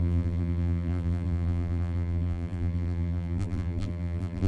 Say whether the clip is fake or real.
fake